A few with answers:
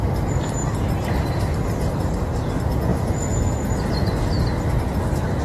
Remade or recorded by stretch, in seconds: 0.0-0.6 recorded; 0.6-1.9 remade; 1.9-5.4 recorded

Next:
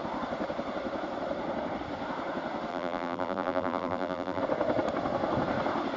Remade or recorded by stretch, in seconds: 0.0-2.7 recorded; 2.7-4.4 remade; 4.4-6.0 recorded

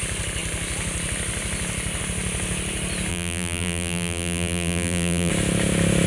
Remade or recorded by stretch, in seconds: 0.0-3.1 recorded; 3.1-5.3 remade; 5.3-6.1 recorded

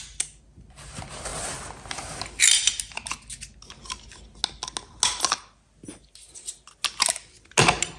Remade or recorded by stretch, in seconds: 0.0-8.0 recorded